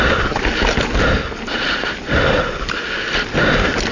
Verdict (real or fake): real